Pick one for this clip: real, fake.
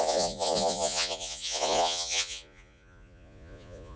fake